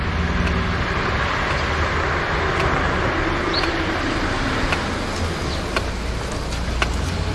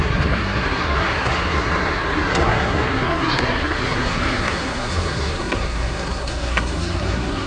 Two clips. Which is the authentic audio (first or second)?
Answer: first